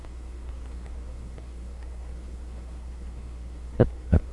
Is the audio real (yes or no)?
no